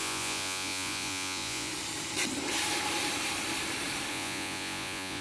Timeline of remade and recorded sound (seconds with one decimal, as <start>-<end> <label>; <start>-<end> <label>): 0.0-1.7 remade; 1.7-4.1 recorded; 4.1-5.2 remade